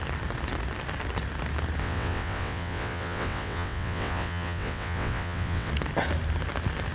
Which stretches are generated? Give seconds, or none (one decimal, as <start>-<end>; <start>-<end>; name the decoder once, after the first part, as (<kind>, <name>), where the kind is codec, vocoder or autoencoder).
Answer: 1.8-5.7 (vocoder, WaveNeXt)